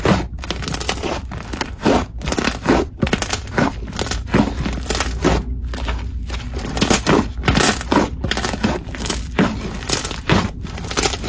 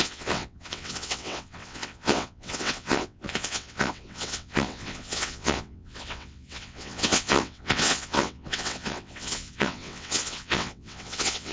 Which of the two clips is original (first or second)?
first